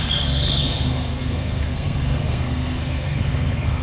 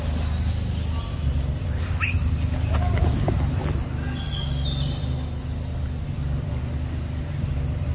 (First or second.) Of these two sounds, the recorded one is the second